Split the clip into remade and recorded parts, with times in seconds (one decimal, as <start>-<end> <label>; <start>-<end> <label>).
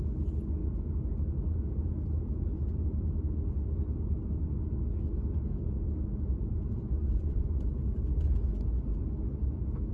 0.0-7.0 recorded; 7.0-7.6 remade; 7.6-9.9 recorded